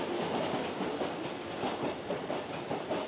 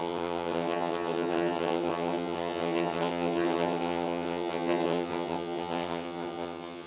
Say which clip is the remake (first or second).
second